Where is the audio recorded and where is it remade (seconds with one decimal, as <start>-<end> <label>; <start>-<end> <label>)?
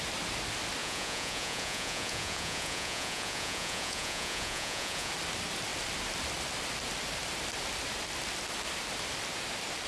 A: 0.0-0.8 recorded; 0.8-5.1 remade; 5.1-9.9 recorded